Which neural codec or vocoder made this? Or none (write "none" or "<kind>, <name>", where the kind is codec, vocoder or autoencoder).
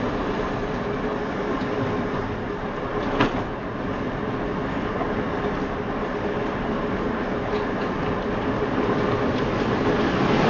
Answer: none